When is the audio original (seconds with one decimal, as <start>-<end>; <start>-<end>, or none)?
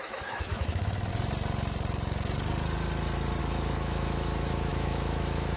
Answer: 1.1-3.4